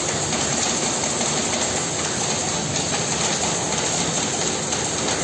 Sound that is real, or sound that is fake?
real